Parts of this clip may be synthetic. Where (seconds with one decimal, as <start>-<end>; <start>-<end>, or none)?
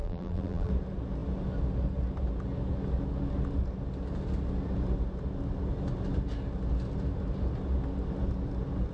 0.0-0.7